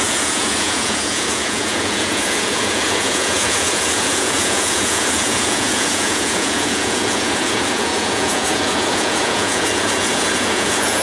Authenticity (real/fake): fake